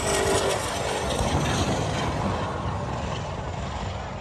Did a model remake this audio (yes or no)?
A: no